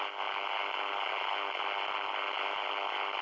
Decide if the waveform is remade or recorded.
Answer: recorded